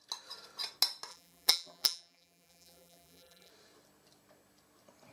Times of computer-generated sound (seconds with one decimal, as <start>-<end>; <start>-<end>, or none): 1.1-3.5